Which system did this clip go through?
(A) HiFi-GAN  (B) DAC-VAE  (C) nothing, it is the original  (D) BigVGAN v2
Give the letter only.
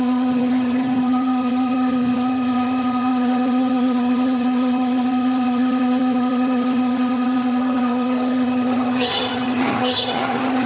A